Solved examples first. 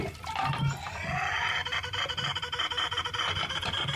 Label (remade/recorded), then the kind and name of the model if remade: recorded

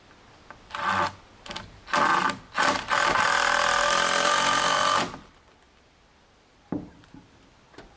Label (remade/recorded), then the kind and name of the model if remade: recorded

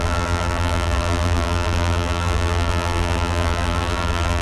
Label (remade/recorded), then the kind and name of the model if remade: remade, vocoder, BigVGAN v2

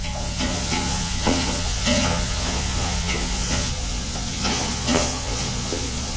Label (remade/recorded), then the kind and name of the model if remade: remade, vocoder, Vocos